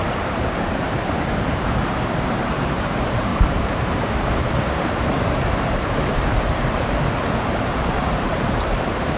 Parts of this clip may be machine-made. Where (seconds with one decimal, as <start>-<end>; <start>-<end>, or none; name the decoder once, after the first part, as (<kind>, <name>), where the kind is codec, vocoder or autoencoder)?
0.0-9.2 (vocoder, BigVGAN v2)